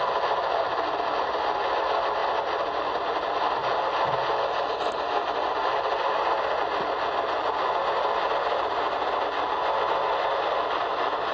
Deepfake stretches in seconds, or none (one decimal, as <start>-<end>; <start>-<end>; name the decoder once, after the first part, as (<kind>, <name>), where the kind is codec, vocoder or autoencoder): none

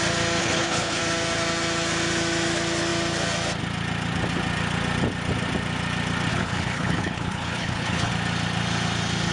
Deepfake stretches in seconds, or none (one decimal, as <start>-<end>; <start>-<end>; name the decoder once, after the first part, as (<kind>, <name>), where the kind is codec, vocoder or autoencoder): 0.4-1.0 (codec, HILCodec); 6.3-8.1

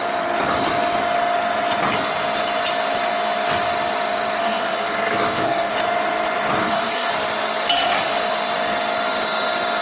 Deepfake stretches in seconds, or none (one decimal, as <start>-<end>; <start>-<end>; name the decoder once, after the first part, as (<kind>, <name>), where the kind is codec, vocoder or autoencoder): 4.4-5.7 (codec, SNAC); 6.6-7.1

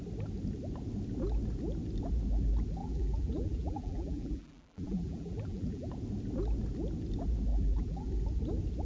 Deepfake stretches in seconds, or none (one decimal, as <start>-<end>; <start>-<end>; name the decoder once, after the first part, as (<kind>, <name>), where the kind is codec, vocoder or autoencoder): 2.8-5.9 (vocoder, BigVGAN v2); 7.5-8.1

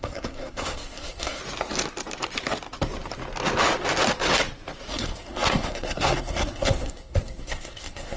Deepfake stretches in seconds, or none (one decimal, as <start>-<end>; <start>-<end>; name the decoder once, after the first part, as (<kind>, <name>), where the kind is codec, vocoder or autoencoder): 0.0-1.4 (codec, SNAC); 4.9-8.2

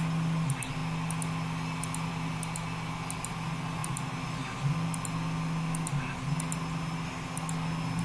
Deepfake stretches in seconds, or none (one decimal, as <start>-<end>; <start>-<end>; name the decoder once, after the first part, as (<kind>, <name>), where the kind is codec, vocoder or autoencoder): none